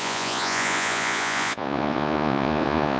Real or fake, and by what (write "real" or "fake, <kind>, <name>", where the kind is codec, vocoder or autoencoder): fake, vocoder, Vocos